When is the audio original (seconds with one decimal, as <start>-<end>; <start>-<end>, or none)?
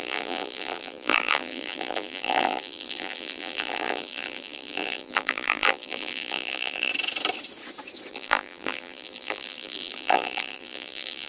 6.9-8.1